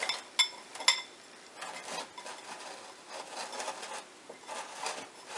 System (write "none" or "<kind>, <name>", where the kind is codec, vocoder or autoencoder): none